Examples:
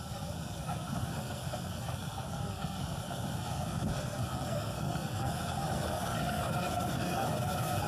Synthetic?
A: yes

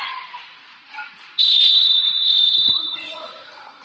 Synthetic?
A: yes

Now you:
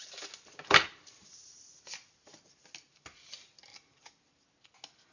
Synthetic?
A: no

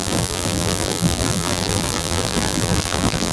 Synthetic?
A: yes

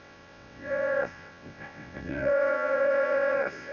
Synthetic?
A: yes